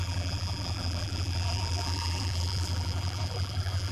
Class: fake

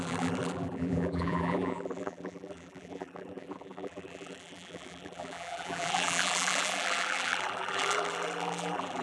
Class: fake